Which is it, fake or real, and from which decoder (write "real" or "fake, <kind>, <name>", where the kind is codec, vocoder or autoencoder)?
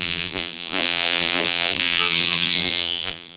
fake, vocoder, BigVGAN v2